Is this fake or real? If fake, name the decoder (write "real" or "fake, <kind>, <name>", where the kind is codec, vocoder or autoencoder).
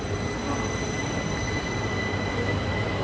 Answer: real